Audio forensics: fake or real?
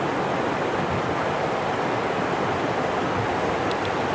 real